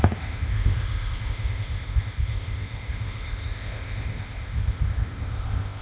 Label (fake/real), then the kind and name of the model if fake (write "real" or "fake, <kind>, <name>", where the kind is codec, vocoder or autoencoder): fake, codec, ZipCodec